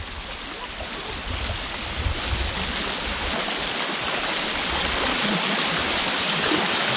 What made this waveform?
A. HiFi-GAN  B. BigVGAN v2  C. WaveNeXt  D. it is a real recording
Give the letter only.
D